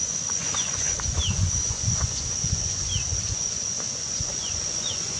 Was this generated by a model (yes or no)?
yes